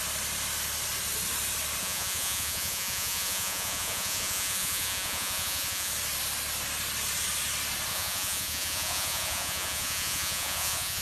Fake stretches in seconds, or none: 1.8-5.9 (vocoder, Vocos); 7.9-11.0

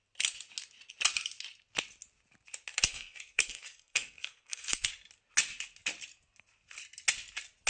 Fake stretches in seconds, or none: 2.7-4.9 (codec, SNAC)

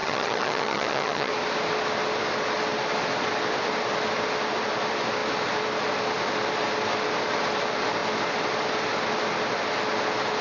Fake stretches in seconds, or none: 0.0-1.3 (vocoder, HiFi-GAN)